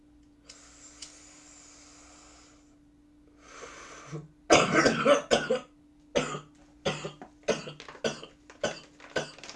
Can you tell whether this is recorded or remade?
recorded